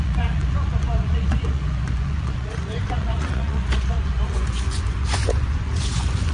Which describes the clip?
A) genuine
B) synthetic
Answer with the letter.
B